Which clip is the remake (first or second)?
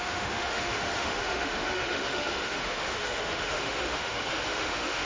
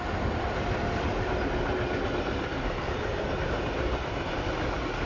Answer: first